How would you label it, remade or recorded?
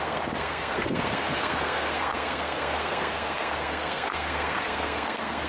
remade